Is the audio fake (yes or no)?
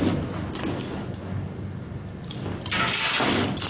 no